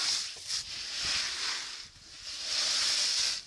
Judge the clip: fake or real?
real